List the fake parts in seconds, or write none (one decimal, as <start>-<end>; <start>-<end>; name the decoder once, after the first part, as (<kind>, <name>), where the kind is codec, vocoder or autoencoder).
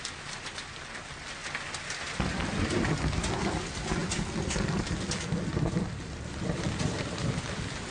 0.0-1.4 (vocoder, BigVGAN v2); 3.5-7.9